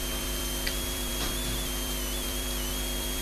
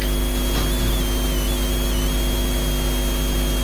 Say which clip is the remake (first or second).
first